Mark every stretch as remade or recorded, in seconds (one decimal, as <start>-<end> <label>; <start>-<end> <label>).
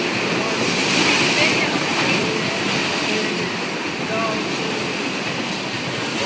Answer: 0.0-6.3 recorded